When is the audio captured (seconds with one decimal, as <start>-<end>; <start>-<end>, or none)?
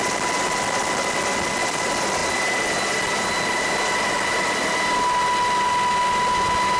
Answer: 0.0-6.8